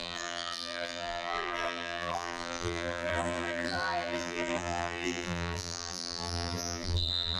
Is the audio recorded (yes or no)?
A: no